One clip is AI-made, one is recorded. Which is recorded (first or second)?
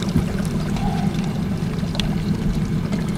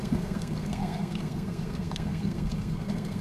first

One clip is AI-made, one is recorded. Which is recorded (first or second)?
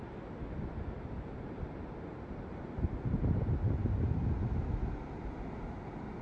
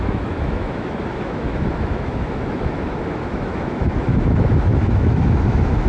first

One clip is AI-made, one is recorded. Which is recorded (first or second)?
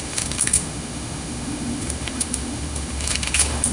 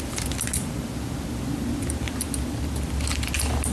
second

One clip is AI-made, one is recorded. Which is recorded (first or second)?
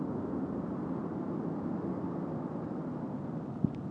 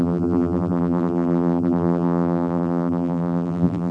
first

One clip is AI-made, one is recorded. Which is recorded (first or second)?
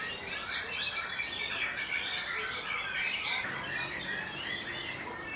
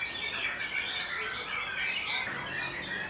second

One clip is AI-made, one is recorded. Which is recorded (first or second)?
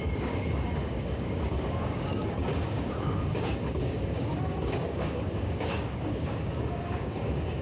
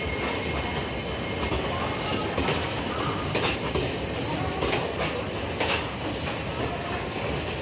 second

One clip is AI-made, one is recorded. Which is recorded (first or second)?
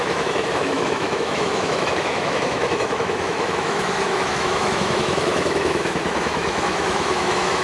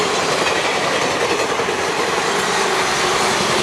second